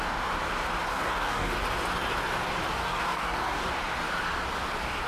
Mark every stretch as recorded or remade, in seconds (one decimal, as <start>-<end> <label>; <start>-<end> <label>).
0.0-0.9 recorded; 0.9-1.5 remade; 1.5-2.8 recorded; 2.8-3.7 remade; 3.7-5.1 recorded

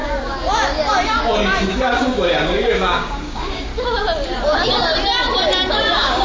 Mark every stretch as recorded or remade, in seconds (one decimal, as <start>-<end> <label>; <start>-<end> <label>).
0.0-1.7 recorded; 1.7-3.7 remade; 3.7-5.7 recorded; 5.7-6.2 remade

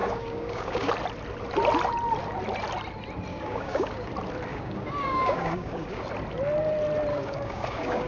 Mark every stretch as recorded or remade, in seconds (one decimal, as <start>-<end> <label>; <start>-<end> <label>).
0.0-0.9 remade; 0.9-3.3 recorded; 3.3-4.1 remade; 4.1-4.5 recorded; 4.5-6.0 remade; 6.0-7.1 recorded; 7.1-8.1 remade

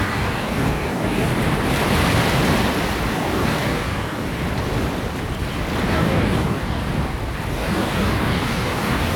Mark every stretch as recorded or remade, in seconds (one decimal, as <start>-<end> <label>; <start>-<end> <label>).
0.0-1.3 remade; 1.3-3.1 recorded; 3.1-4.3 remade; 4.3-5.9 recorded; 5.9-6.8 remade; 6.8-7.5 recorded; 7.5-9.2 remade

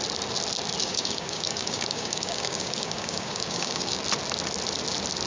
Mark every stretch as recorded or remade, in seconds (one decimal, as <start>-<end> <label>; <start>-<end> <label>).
0.0-0.8 recorded; 0.8-4.0 remade; 4.0-5.3 recorded

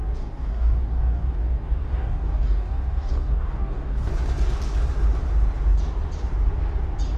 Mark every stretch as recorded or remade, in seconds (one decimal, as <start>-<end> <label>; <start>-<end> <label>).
0.0-4.1 remade; 4.1-7.2 recorded